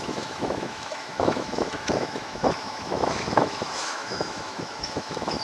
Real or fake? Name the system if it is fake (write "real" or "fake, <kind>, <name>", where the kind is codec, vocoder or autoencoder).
fake, autoencoder, DAC-VAE